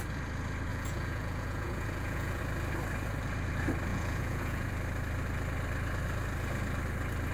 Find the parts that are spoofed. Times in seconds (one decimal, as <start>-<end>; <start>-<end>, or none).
0.7-2.4; 3.9-4.7